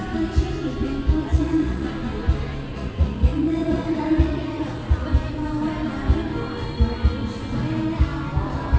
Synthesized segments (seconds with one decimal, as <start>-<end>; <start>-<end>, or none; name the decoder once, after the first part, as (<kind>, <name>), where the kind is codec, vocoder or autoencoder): 1.3-1.9 (vocoder, Vocos); 2.7-5.1